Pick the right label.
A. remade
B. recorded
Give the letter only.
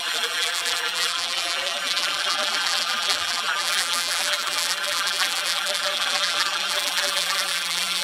A